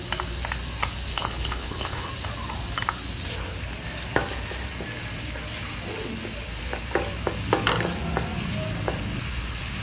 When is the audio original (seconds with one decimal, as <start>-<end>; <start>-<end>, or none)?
0.0-1.1; 2.1-9.8